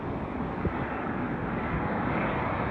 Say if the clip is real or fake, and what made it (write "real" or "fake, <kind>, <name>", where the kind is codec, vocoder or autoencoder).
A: fake, codec, DAC